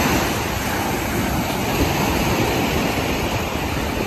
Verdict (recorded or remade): recorded